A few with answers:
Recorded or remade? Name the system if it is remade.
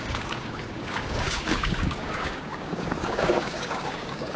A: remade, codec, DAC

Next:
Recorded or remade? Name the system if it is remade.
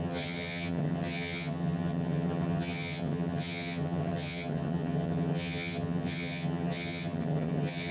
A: remade, vocoder, HiFi-GAN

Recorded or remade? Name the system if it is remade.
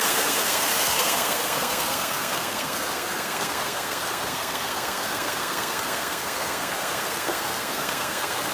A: remade, codec, SNAC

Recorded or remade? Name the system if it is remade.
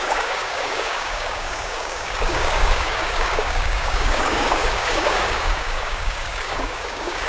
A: remade, codec, DAC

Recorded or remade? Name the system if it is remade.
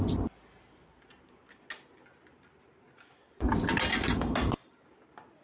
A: recorded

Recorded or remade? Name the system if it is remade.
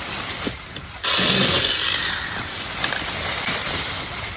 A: recorded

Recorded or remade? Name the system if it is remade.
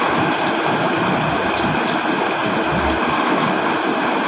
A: recorded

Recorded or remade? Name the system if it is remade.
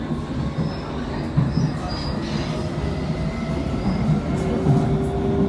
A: recorded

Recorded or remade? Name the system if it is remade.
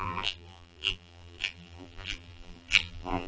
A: remade, vocoder, BigVGAN v2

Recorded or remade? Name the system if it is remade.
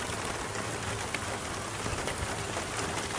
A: recorded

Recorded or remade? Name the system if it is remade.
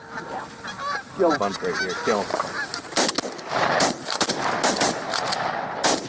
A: recorded